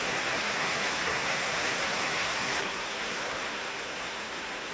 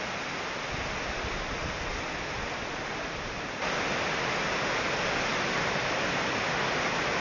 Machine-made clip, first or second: first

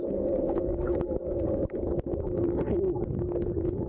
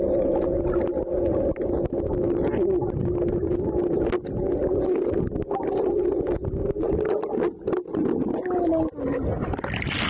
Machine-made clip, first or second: first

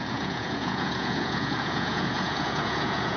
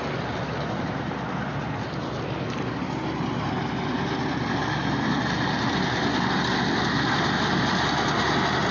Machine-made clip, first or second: first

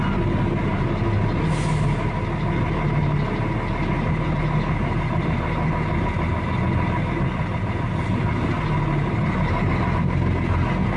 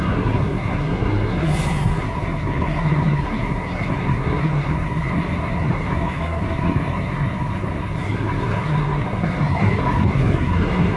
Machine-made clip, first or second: second